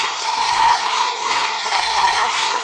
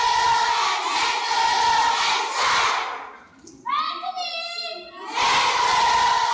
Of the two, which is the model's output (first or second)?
first